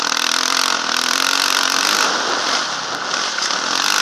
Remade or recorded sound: recorded